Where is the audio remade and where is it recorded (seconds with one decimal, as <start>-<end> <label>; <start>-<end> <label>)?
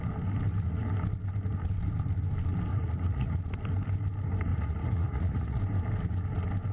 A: 0.0-2.7 recorded; 2.7-3.4 remade; 3.4-4.5 recorded; 4.5-5.6 remade; 5.6-6.7 recorded